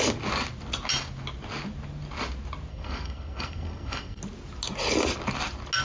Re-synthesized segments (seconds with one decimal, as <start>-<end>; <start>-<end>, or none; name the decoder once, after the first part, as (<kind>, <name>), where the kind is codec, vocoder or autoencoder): 2.7-4.2 (codec, SNAC)